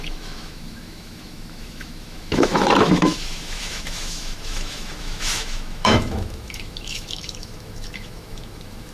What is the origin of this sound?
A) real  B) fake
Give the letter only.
B